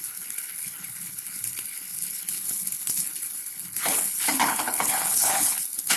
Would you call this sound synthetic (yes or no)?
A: yes